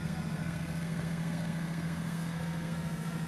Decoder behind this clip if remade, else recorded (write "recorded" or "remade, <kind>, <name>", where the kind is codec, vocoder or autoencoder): remade, codec, SNAC